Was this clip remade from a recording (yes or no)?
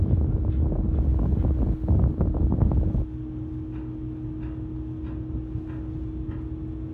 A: no